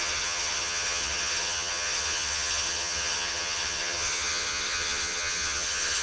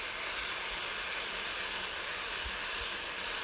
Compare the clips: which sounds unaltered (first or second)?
second